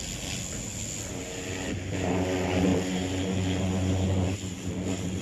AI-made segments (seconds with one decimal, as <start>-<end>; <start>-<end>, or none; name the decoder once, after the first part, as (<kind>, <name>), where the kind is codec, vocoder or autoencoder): none